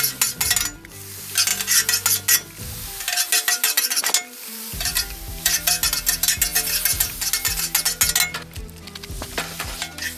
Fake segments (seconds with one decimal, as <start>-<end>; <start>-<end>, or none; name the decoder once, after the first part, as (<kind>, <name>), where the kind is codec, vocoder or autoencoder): none